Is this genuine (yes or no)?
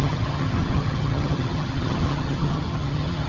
no